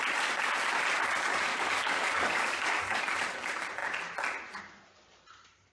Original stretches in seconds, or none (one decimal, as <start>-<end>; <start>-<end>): 0.0-1.5; 3.0-5.7